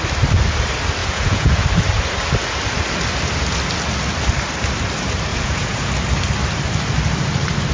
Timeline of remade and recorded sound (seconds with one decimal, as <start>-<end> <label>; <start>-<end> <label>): 0.0-1.0 recorded; 1.0-1.6 remade; 1.6-5.3 recorded; 5.3-5.9 remade; 5.9-7.7 recorded